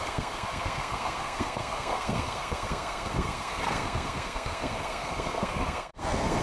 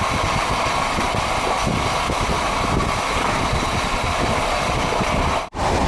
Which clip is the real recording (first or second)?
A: second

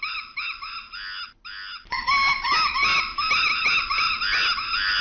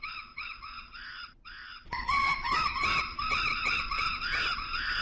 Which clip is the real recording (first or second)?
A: first